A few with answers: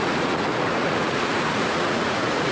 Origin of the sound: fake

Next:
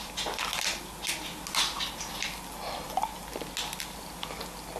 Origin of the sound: real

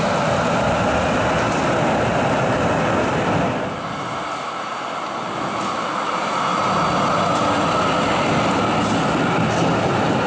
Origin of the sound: real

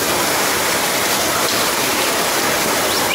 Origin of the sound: real